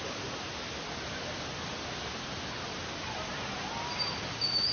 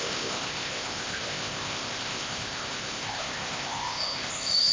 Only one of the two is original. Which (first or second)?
first